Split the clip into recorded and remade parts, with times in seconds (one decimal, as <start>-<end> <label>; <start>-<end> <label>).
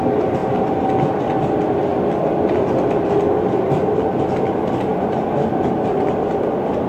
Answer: 0.0-6.9 recorded